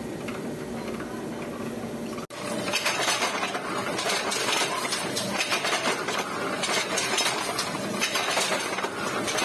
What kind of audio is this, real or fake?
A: real